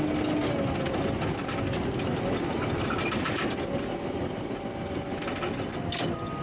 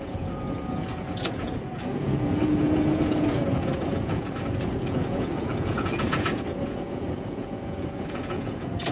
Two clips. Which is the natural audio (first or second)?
first